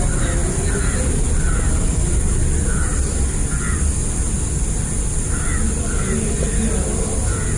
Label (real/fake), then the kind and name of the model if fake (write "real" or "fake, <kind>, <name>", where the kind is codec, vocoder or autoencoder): real